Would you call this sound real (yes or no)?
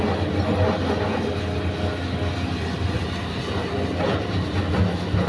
yes